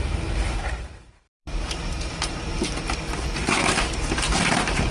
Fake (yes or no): yes